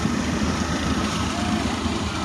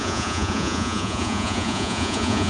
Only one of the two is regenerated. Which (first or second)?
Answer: second